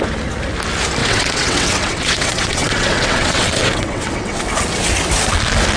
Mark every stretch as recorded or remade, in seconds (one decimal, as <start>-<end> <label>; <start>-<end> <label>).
0.0-1.0 recorded; 1.0-4.4 remade; 4.4-5.8 recorded

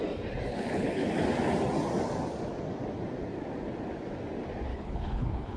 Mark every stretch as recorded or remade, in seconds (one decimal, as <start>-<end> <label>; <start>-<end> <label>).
0.0-0.5 recorded; 0.5-1.1 remade; 1.1-4.7 recorded; 4.7-5.6 remade

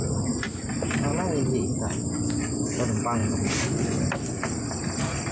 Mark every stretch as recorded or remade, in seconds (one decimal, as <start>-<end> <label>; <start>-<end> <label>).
0.0-5.3 recorded

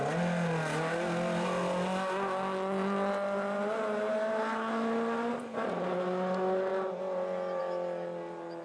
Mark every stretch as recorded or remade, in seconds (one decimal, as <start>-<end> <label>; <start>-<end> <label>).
0.0-8.6 recorded

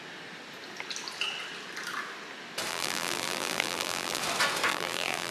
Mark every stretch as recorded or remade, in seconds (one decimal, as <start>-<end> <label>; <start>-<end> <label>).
0.0-2.7 recorded; 2.7-4.2 remade; 4.2-4.7 recorded; 4.7-5.3 remade

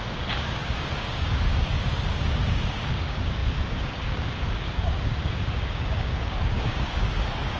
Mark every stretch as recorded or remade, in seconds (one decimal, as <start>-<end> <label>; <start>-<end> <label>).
0.0-7.6 remade

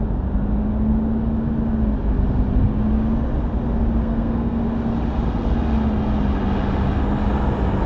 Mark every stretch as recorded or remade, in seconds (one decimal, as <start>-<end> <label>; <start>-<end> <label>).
0.0-4.0 recorded; 4.0-4.6 remade; 4.6-7.9 recorded

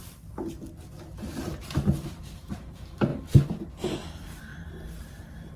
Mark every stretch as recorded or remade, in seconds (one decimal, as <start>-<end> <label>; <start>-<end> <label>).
0.0-2.4 recorded; 2.4-3.1 remade; 3.1-3.7 recorded; 3.7-4.5 remade; 4.5-5.1 recorded; 5.1-5.6 remade